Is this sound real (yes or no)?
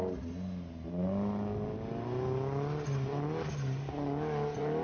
yes